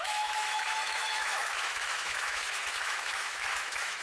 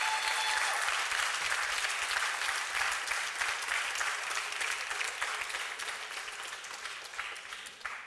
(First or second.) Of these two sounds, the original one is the second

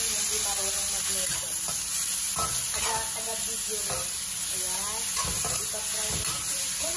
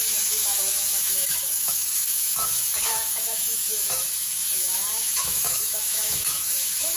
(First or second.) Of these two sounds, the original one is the first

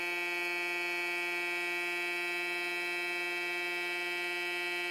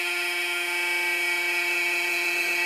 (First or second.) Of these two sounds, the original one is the first